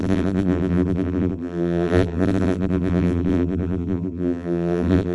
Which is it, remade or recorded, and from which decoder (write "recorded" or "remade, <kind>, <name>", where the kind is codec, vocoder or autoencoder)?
remade, vocoder, BigVGAN v2